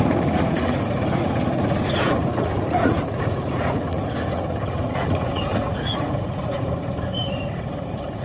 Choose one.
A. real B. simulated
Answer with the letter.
B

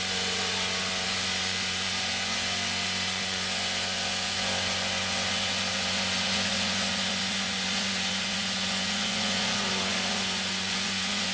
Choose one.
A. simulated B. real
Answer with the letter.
A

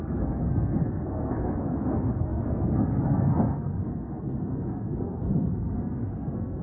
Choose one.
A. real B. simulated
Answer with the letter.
B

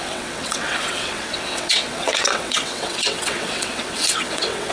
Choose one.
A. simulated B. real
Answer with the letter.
A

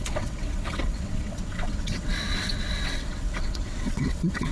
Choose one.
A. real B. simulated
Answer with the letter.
B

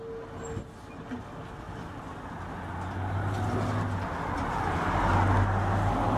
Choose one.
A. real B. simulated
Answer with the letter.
A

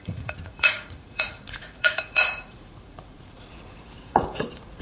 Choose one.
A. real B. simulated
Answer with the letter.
B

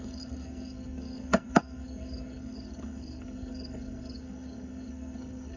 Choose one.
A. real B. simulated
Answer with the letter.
B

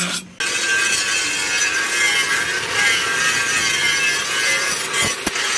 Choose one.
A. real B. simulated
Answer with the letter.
A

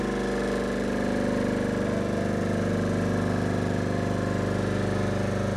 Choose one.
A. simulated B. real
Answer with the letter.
B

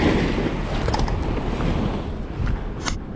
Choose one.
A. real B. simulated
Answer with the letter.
A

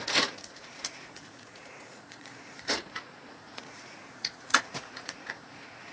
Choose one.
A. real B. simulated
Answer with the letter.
B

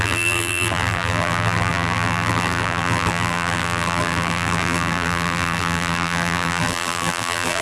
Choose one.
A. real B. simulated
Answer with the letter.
B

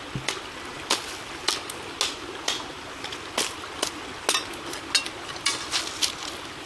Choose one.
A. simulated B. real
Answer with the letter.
B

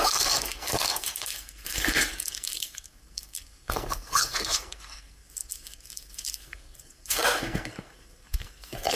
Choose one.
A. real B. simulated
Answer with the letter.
B